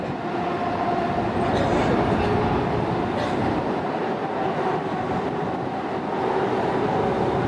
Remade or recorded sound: recorded